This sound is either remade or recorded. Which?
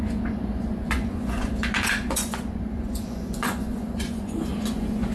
remade